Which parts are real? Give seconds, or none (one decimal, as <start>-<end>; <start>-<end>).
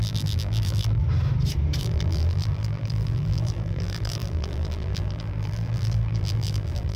1.0-1.8